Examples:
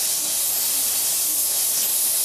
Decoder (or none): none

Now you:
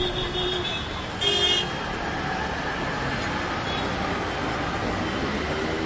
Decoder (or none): none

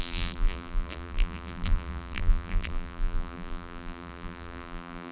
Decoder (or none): vocoder, BigVGAN v2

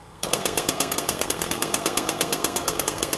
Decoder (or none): codec, SNAC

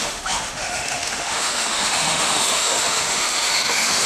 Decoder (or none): autoencoder, DAC-VAE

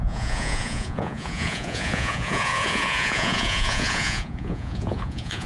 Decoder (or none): vocoder, Vocos